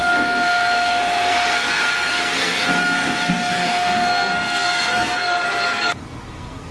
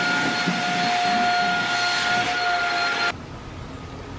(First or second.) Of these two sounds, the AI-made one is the first